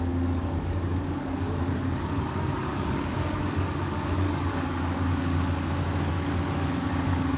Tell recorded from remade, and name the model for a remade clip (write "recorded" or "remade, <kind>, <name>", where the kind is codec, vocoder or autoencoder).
remade, codec, DAC